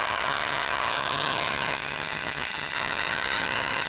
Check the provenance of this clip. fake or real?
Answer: fake